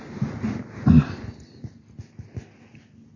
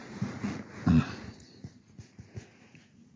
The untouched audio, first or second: first